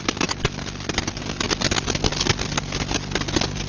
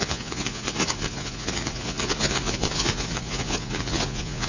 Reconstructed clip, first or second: second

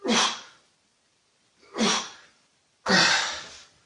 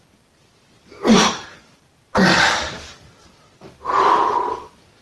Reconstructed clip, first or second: second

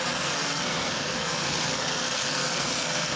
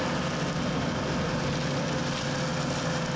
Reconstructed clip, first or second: first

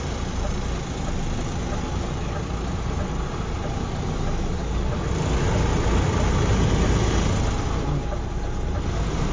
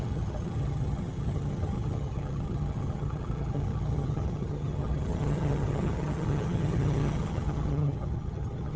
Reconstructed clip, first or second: second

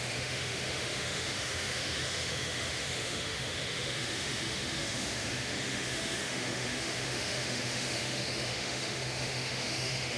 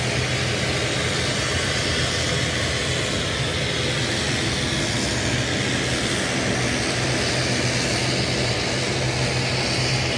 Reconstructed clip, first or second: first